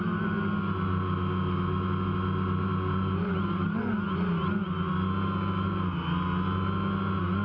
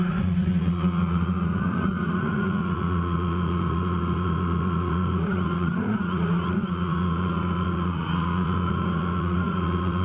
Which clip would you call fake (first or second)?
second